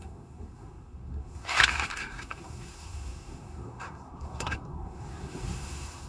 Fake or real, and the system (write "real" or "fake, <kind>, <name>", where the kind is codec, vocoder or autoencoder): fake, codec, SNAC